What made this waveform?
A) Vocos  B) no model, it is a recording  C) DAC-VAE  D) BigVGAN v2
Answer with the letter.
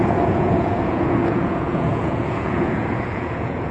A